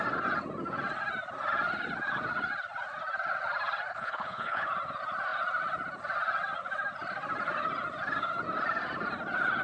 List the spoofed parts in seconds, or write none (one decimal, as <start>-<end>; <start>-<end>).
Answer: 3.9-4.7